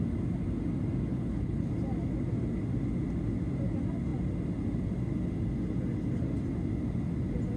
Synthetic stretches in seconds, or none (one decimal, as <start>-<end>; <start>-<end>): 1.1-1.7